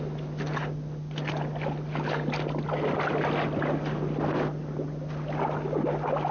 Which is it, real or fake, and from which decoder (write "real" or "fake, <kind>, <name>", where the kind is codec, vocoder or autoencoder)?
real